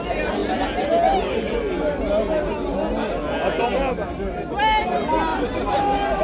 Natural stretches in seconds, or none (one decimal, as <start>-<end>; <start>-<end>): 0.0-6.2